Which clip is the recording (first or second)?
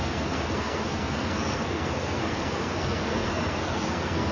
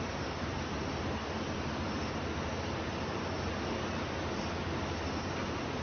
second